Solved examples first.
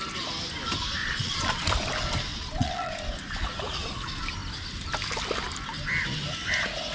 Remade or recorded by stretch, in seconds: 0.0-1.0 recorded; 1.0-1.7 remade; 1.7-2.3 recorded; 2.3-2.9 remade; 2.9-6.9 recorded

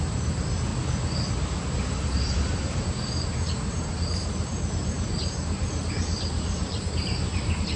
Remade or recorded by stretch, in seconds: 0.0-0.7 remade; 0.7-1.7 recorded; 1.7-7.8 remade

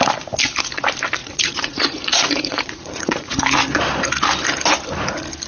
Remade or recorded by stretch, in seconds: 0.0-1.2 recorded; 1.2-3.4 remade; 3.4-5.5 recorded

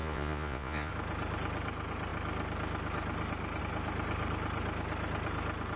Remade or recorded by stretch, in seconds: 0.0-0.9 remade; 0.9-5.8 recorded

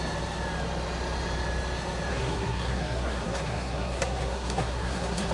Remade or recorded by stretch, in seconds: 0.0-2.1 recorded; 2.1-5.3 remade

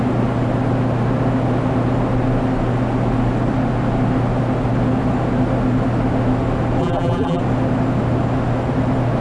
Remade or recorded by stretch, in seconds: 0.0-6.8 recorded; 6.8-7.4 remade; 7.4-9.2 recorded